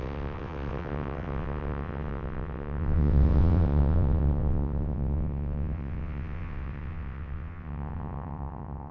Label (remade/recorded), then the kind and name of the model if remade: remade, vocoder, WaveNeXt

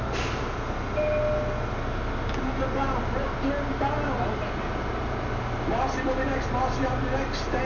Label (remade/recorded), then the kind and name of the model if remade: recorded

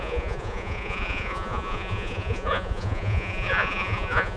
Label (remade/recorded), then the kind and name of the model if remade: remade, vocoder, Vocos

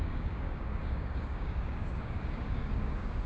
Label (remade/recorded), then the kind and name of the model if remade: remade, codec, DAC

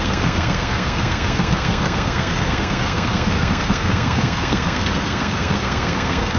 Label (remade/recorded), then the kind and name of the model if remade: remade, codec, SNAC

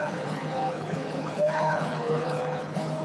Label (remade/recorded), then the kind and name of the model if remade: remade, codec, HILCodec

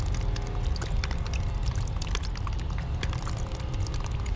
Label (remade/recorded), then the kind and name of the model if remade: recorded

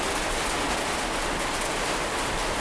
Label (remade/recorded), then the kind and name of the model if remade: recorded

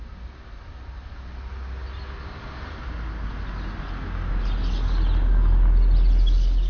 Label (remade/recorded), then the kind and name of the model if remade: recorded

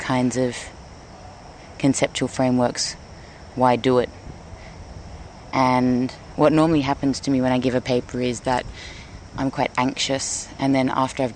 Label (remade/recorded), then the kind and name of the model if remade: recorded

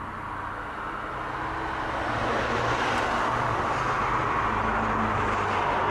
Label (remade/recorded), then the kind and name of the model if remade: recorded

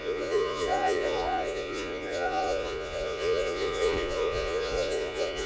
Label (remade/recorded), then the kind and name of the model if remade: remade, vocoder, Vocos